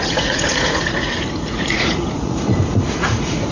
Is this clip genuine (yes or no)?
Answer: no